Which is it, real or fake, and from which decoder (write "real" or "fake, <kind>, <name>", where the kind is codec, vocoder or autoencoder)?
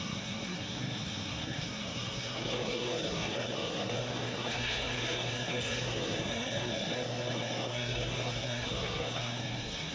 fake, codec, SNAC